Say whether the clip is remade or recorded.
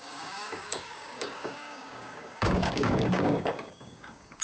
remade